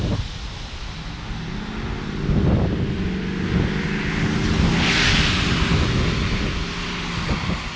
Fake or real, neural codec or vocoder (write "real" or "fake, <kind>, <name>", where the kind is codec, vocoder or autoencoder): real